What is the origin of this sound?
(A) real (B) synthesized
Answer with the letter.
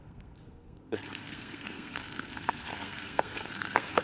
B